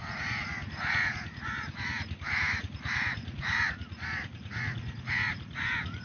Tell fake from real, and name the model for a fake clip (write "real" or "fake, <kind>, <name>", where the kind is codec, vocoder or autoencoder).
fake, vocoder, Vocos